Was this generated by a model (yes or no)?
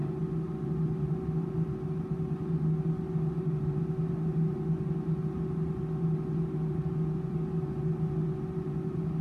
no